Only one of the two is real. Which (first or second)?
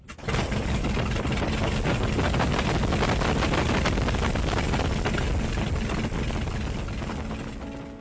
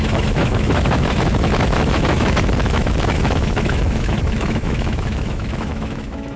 first